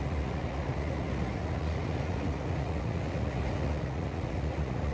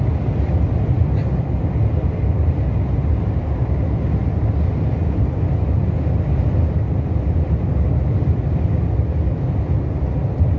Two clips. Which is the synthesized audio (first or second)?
first